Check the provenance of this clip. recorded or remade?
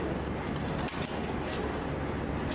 recorded